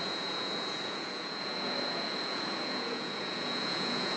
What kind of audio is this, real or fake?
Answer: fake